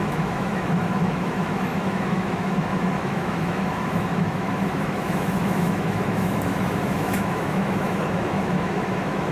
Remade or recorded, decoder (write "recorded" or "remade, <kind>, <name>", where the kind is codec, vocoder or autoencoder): remade, autoencoder, DAC-VAE